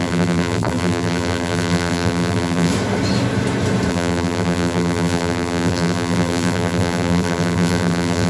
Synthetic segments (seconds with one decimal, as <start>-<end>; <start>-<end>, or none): 0.0-2.7; 3.9-8.3